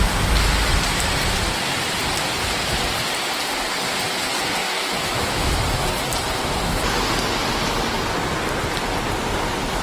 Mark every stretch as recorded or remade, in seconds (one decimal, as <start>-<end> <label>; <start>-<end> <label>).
0.0-4.6 recorded; 4.6-5.5 remade; 5.5-9.8 recorded